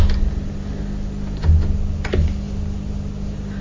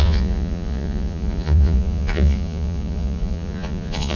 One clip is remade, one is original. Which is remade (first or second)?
second